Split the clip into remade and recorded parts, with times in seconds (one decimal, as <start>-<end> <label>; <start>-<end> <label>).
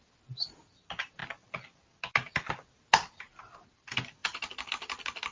0.0-5.3 recorded